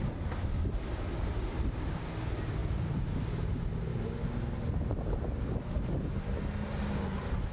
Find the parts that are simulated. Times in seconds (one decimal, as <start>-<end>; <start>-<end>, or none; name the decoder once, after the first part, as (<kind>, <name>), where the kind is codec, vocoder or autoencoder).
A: none